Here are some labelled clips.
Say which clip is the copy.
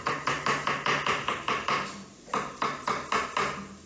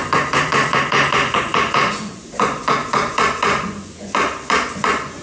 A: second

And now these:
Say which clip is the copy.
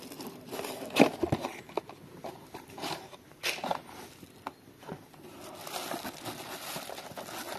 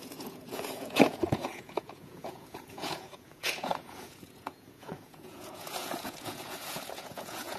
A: second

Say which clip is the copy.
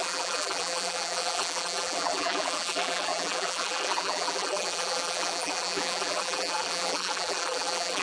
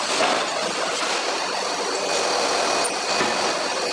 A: first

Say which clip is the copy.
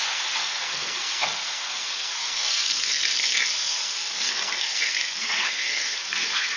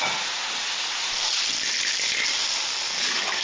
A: first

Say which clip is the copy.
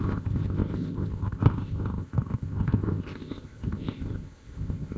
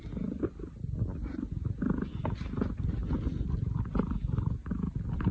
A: first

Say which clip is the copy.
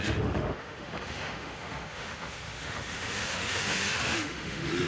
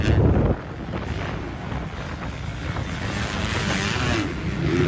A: first